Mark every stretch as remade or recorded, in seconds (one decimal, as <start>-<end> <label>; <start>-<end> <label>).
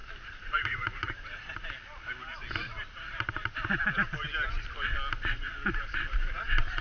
0.0-1.5 remade; 1.5-6.8 recorded